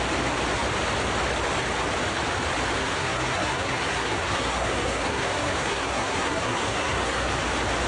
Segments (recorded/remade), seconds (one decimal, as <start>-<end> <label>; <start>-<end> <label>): 0.0-2.8 recorded; 2.8-7.3 remade; 7.3-7.9 recorded

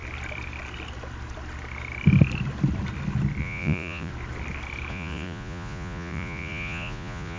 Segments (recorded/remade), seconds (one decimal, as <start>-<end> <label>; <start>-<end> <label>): 0.0-3.4 recorded; 3.4-4.1 remade; 4.1-4.9 recorded; 4.9-7.4 remade

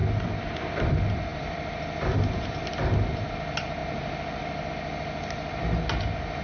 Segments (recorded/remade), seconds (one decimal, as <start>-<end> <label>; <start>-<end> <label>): 0.0-1.3 recorded; 1.3-2.7 remade; 2.7-6.4 recorded

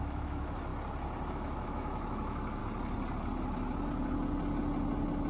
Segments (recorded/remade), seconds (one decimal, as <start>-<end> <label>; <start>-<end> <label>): 0.0-0.7 remade; 0.7-1.3 recorded; 1.3-2.6 remade; 2.6-5.3 recorded

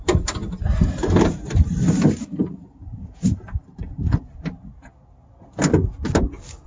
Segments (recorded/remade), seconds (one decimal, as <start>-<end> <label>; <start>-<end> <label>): 0.0-4.0 remade; 4.0-6.7 recorded

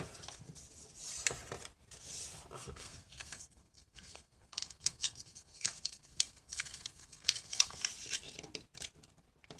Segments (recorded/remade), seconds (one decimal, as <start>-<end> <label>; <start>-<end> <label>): 0.0-2.6 recorded; 2.6-7.8 remade; 7.8-9.6 recorded